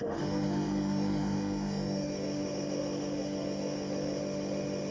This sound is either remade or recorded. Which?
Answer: remade